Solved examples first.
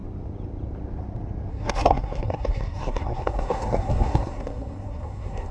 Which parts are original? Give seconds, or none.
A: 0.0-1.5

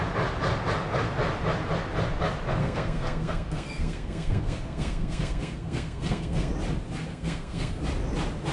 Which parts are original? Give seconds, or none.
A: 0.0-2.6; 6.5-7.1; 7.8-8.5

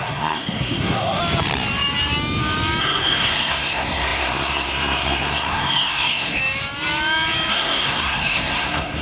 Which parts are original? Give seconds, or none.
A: 1.2-2.8; 6.4-7.5